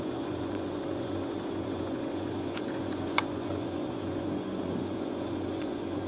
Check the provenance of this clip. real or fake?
fake